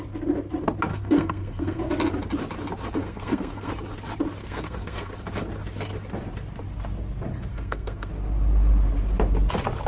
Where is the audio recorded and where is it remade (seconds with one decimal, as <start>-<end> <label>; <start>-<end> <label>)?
0.0-0.9 recorded; 0.9-1.8 remade; 1.8-3.0 recorded; 3.0-3.7 remade; 3.7-4.4 recorded; 4.4-5.1 remade; 5.1-7.5 recorded; 7.5-8.1 remade; 8.1-9.9 recorded